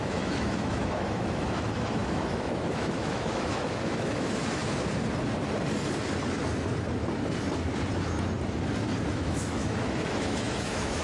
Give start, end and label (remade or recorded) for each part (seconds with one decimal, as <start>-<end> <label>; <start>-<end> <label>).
0.0-4.6 remade; 4.6-9.1 recorded; 9.1-11.0 remade